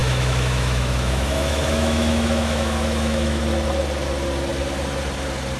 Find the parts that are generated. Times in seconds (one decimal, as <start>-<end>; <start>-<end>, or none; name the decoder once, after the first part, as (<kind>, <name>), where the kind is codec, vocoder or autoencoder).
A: 0.0-3.4 (autoencoder, DAC-VAE)